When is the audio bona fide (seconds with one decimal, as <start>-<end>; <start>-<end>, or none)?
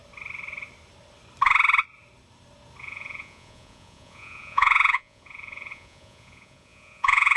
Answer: 0.0-2.8